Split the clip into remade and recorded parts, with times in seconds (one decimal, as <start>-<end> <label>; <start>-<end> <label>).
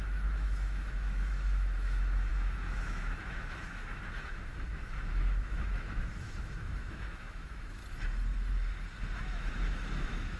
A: 0.0-7.8 remade; 7.8-9.2 recorded; 9.2-10.4 remade